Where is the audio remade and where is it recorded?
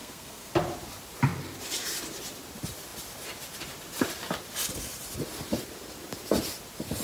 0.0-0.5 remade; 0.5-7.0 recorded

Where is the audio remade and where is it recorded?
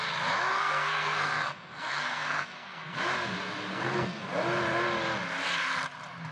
0.0-0.5 recorded; 0.5-3.0 remade; 3.0-3.7 recorded; 3.7-4.3 remade; 4.3-6.3 recorded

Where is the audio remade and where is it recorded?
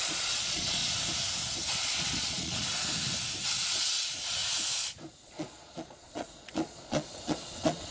0.0-0.8 remade; 0.8-1.8 recorded; 1.8-2.7 remade; 2.7-3.7 recorded; 3.7-4.4 remade; 4.4-5.1 recorded; 5.1-7.9 remade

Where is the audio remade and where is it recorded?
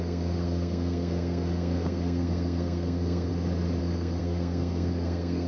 0.0-3.3 remade; 3.3-3.8 recorded; 3.8-5.5 remade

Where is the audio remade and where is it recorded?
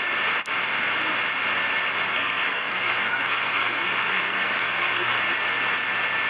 0.0-2.1 recorded; 2.1-5.2 remade; 5.2-6.3 recorded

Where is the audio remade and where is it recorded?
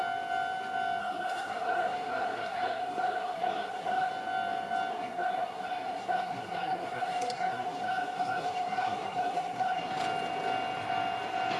0.0-1.0 recorded; 1.0-4.1 remade; 4.1-4.9 recorded; 4.9-9.9 remade; 9.9-11.6 recorded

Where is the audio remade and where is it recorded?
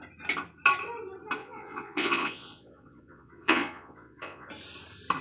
0.0-1.4 recorded; 1.4-4.5 remade; 4.5-5.2 recorded